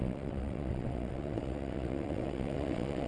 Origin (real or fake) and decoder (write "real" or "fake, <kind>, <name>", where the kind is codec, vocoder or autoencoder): fake, vocoder, WaveNeXt